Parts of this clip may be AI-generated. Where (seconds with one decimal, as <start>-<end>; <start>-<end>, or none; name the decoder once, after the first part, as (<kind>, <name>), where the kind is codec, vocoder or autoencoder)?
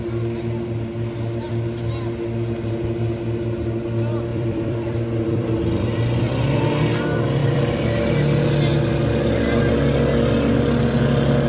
4.3-5.5 (vocoder, BigVGAN v2); 7.4-8.1